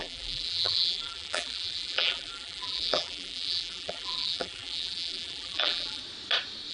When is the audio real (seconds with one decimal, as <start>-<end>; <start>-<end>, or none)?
6.0-6.7